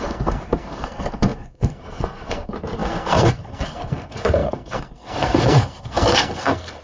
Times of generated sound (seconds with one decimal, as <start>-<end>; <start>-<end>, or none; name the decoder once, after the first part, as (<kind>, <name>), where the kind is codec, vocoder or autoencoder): 0.0-6.8 (codec, SNAC)